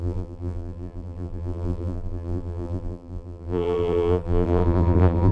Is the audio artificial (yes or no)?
yes